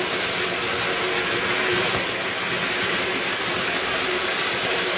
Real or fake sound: real